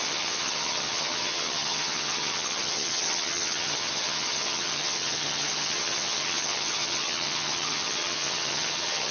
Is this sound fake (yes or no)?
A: yes